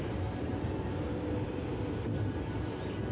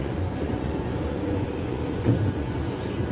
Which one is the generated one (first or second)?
second